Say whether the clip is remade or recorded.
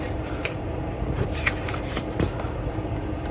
remade